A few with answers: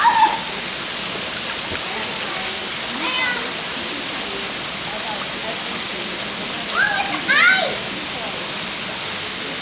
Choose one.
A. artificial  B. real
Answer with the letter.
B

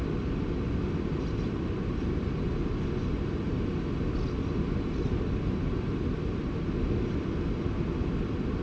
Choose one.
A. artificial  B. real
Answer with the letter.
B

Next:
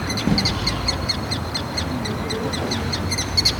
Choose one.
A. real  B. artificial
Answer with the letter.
A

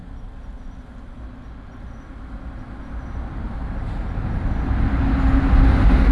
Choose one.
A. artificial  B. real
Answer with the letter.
B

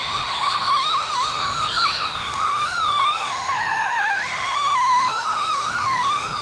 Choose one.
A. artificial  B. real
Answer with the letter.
A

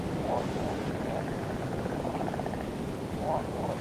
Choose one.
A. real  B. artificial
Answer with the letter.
A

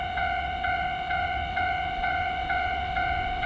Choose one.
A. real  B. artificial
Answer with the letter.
B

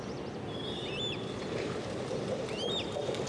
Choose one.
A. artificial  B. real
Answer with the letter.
B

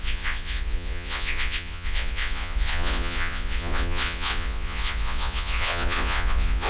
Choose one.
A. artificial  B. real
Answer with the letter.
A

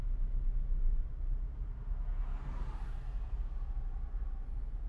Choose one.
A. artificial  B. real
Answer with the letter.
B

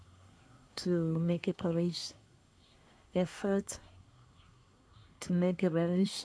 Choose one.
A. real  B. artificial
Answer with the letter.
B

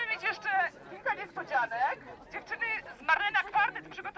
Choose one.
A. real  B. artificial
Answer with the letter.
A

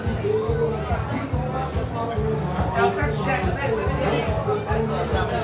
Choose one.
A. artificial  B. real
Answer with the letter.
B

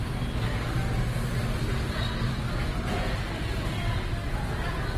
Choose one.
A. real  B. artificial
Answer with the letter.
A